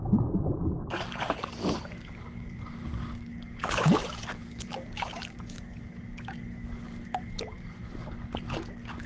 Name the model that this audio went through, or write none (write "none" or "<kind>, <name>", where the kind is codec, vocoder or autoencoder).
codec, DAC